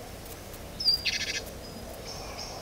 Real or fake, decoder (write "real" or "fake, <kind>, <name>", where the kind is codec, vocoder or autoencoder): real